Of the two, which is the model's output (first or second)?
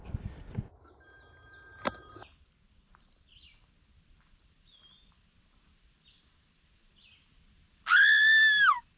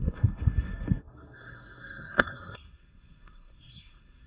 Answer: second